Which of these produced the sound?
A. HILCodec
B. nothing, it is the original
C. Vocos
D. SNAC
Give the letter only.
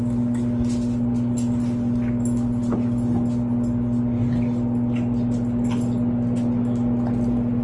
B